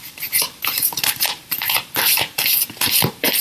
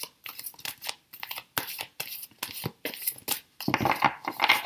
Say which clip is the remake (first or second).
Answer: first